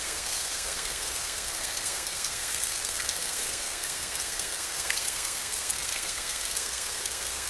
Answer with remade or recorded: remade